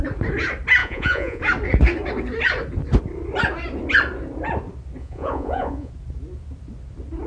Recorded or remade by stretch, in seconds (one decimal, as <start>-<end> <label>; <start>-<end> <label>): 0.0-0.8 recorded; 0.8-1.4 remade; 1.4-5.0 recorded; 5.0-5.9 remade; 5.9-7.3 recorded